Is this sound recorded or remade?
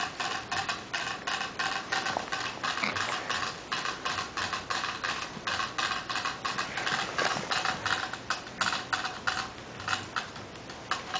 recorded